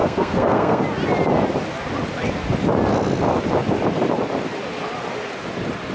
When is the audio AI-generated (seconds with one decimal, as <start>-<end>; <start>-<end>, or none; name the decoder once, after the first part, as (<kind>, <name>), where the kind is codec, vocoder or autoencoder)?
0.0-0.8 (codec, SNAC)